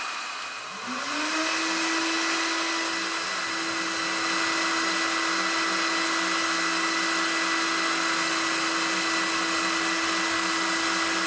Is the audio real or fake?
real